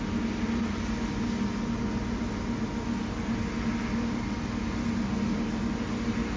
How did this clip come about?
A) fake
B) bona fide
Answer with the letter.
B